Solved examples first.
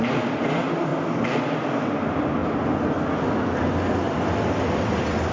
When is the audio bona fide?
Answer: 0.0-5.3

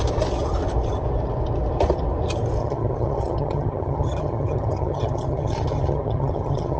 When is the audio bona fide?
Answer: 0.0-2.6